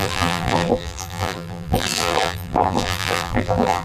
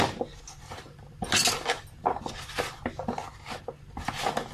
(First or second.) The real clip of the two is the second